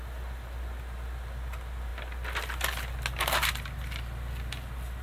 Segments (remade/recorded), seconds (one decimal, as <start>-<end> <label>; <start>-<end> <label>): 0.0-5.0 recorded

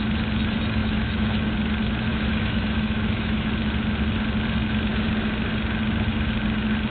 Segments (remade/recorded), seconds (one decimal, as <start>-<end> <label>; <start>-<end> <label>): 0.0-0.8 recorded; 0.8-1.5 remade; 1.5-2.1 recorded; 2.1-3.5 remade; 3.5-6.9 recorded

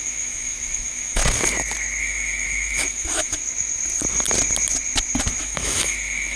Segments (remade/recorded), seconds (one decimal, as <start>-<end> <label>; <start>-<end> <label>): 0.0-1.2 remade; 1.2-2.0 recorded; 2.0-3.4 remade; 3.4-5.4 recorded; 5.4-6.4 remade

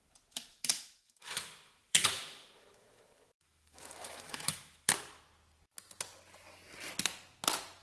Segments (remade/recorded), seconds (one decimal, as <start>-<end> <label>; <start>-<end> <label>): 0.0-0.5 recorded; 0.5-4.9 remade; 4.9-7.8 recorded

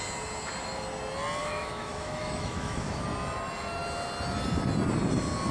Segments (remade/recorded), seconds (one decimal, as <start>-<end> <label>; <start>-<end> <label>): 0.0-1.4 recorded; 1.4-3.0 remade; 3.0-5.5 recorded

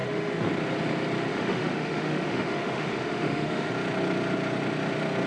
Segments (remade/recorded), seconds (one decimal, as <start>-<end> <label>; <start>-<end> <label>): 0.0-0.5 remade; 0.5-1.3 recorded; 1.3-3.7 remade; 3.7-5.3 recorded

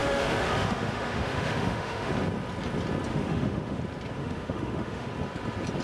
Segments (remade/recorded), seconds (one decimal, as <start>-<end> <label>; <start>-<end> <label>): 0.0-2.1 remade; 2.1-3.1 recorded; 3.1-3.8 remade; 3.8-4.2 recorded; 4.2-5.1 remade; 5.1-5.8 recorded